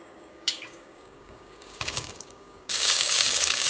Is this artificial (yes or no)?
yes